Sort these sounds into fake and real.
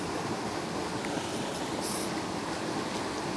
real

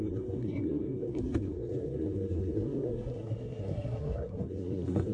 fake